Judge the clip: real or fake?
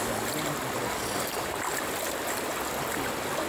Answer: real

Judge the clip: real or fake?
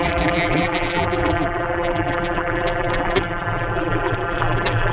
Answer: fake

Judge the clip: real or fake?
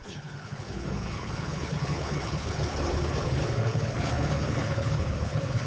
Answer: fake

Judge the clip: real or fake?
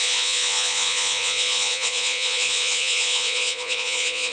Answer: fake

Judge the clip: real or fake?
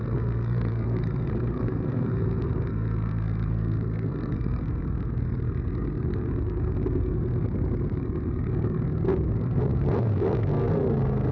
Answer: fake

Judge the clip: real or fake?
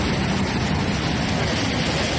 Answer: real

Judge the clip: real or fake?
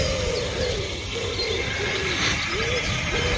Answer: real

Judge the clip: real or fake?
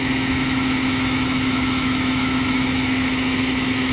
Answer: fake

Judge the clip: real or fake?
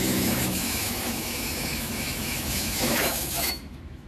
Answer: fake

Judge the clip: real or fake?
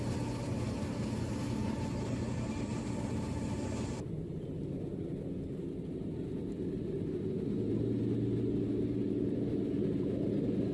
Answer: real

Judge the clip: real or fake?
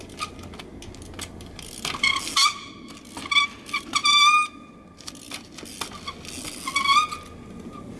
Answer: real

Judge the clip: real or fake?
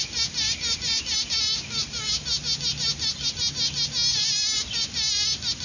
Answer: real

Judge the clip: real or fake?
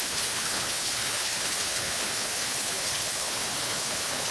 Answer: fake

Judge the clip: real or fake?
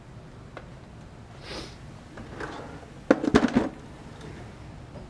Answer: real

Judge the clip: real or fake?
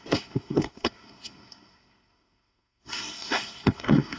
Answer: fake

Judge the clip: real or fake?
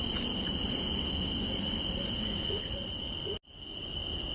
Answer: real